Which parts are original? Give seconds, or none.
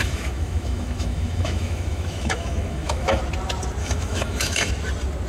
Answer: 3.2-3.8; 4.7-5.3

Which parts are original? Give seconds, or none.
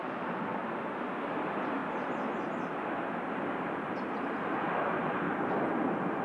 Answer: 0.0-6.2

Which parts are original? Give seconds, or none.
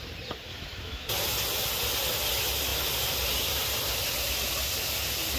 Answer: 0.0-0.5; 1.1-5.4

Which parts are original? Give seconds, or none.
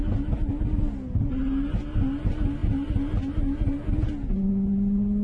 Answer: 0.0-5.2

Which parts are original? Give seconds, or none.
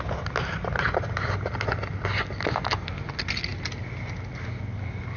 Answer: 0.0-5.2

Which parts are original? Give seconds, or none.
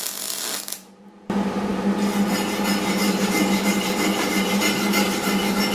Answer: 0.0-5.7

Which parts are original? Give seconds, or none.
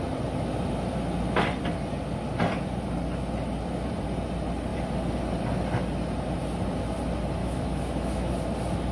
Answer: 0.0-7.4; 8.3-8.9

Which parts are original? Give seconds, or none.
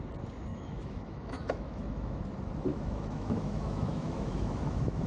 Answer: 0.0-0.5; 2.2-2.7